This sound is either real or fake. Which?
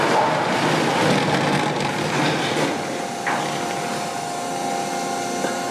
real